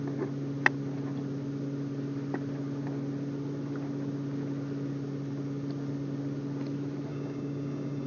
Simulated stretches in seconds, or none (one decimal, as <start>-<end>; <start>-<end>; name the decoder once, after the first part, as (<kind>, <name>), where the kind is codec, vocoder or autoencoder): 7.1-8.1 (codec, DAC)